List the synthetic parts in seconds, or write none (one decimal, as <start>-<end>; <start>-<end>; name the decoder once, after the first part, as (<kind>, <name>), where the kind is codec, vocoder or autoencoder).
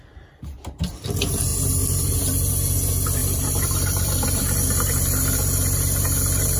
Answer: 1.5-2.5 (vocoder, BigVGAN v2); 3.2-4.4